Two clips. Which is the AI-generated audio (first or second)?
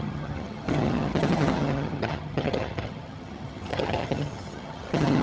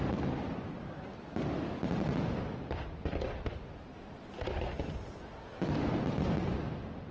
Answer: first